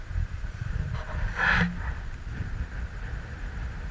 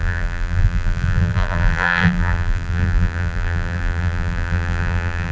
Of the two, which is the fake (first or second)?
second